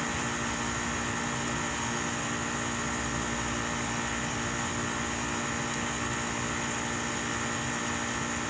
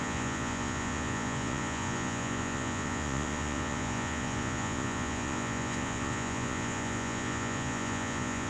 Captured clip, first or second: first